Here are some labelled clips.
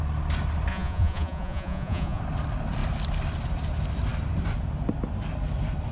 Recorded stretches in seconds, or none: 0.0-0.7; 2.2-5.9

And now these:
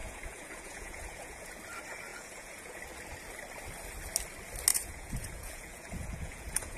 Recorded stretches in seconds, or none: 1.5-2.1; 2.8-4.7

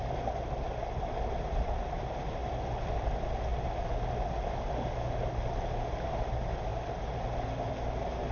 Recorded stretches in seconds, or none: 0.0-8.3

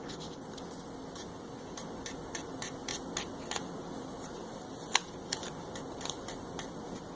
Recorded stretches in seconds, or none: 0.0-7.2

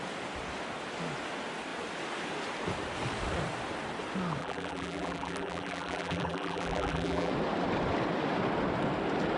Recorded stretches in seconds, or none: 0.0-4.4; 7.3-9.4

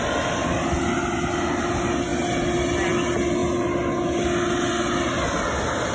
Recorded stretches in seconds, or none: 0.0-5.9

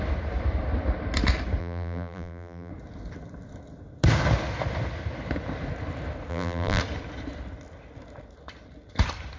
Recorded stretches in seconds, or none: 0.0-1.6; 2.7-6.3; 6.8-9.4

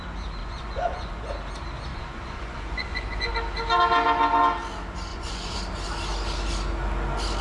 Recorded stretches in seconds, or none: 0.0-0.4; 1.3-1.9; 3.3-5.1; 5.6-7.4